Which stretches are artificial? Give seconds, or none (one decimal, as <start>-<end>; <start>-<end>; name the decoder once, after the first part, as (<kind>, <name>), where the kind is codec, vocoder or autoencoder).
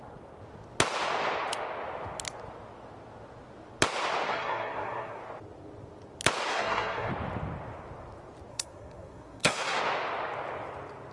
4.3-5.2 (codec, SNAC); 6.5-7.1; 8.5-9.8